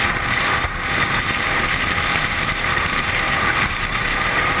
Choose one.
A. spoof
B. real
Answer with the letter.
A